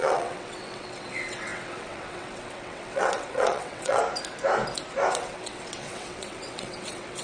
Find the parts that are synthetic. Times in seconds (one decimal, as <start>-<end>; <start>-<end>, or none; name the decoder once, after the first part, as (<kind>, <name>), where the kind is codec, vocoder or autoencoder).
0.0-4.0 (vocoder, WaveNeXt); 5.1-7.2